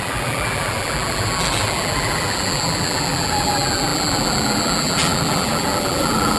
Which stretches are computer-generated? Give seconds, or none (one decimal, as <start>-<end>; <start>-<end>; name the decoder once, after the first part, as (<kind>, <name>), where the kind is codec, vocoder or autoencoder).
0.0-6.4 (vocoder, BigVGAN v2)